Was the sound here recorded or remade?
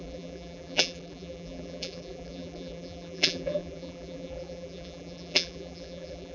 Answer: remade